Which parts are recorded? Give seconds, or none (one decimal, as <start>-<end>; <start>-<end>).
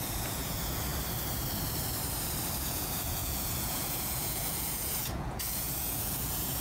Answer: 0.9-2.6